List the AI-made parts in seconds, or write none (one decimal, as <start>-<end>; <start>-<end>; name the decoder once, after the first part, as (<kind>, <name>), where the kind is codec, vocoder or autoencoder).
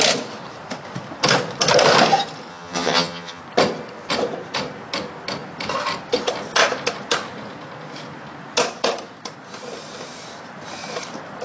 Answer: 2.5-3.4 (vocoder, HiFi-GAN)